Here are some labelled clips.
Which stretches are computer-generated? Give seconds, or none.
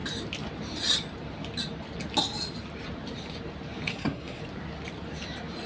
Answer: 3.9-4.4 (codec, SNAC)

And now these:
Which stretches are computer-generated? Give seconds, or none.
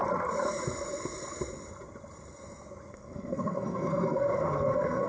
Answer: 2.9-5.1 (codec, SNAC)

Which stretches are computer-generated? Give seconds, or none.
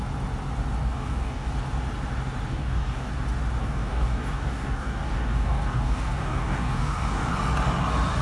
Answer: 0.8-1.5 (codec, DAC); 2.5-3.1; 3.6-7.3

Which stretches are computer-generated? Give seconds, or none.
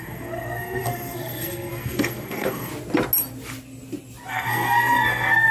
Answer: 0.0-2.7 (codec, SNAC); 4.3-5.5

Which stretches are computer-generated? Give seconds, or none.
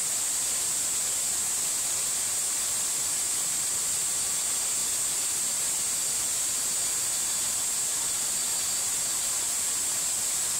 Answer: none